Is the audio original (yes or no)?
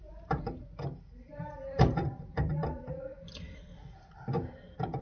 no